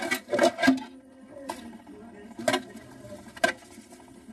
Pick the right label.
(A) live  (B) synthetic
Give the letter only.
A